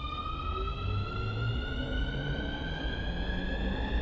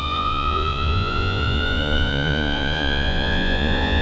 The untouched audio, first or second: first